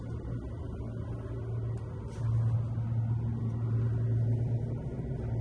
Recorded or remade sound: recorded